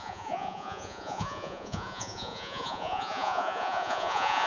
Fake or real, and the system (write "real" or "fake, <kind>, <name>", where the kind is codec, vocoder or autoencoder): fake, vocoder, Vocos